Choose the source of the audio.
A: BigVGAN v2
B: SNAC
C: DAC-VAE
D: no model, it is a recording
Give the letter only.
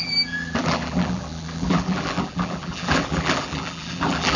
A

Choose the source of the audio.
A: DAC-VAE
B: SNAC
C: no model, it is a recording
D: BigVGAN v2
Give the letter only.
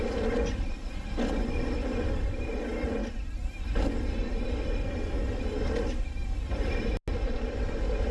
C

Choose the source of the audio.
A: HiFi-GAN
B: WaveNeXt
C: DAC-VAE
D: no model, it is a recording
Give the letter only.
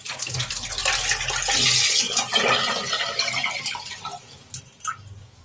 D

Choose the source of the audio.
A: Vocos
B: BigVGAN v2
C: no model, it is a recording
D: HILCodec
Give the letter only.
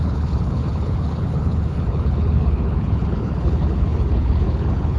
D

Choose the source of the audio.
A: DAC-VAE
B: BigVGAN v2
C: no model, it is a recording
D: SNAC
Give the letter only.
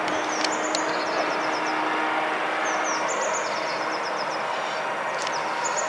C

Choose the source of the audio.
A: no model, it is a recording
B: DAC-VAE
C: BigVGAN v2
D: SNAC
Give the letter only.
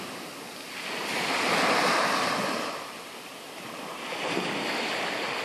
A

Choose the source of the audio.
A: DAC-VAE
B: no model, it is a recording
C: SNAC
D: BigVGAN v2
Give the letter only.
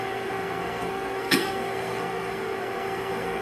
C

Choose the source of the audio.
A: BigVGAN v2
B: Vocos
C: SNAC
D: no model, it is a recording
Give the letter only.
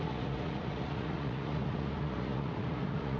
B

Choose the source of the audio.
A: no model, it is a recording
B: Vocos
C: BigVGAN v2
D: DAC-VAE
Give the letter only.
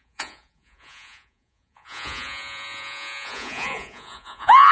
B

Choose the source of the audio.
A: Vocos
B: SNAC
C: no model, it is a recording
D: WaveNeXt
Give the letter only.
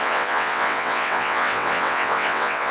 D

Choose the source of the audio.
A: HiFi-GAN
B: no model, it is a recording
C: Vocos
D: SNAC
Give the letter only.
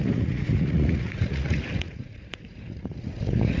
C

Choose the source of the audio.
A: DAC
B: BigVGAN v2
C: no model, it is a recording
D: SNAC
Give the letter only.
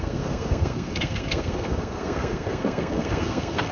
D